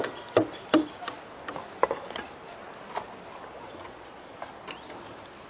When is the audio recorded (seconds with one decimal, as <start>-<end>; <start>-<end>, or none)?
0.0-3.5; 4.2-5.5